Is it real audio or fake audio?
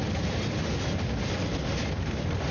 real